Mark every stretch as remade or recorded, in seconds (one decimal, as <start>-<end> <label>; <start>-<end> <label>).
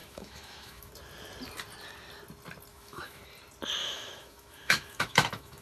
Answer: 0.0-0.9 remade; 0.9-2.7 recorded; 2.7-3.2 remade; 3.2-3.8 recorded; 3.8-5.6 remade